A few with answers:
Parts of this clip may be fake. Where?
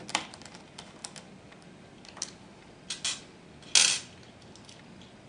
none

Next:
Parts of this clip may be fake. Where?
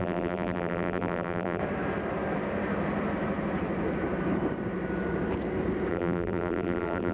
0.0-1.6 (vocoder, BigVGAN v2); 5.9-7.1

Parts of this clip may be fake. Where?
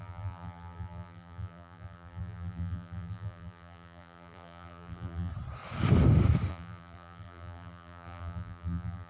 0.0-5.3 (vocoder, BigVGAN v2); 6.5-9.1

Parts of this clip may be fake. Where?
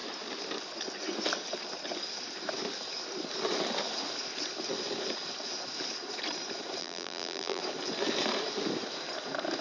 6.8-7.6 (vocoder, BigVGAN v2)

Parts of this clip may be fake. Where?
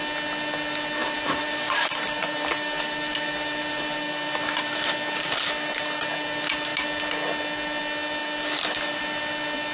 1.0-4.9 (vocoder, BigVGAN v2); 8.2-9.0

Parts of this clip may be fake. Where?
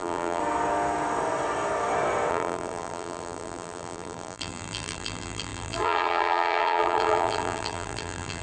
0.0-0.4 (vocoder, BigVGAN v2); 2.3-8.4